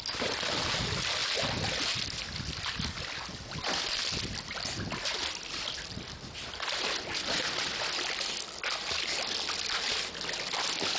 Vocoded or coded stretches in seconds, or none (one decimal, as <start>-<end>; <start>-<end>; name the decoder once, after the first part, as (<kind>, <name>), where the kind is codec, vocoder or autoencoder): none